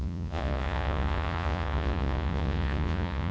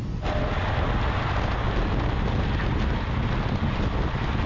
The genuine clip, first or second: second